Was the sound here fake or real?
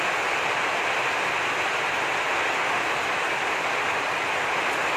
real